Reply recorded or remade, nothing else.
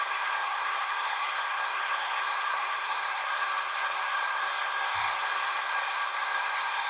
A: remade